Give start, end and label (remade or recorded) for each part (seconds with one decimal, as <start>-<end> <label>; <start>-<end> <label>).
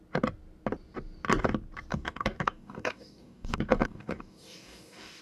0.0-1.9 recorded; 1.9-5.2 remade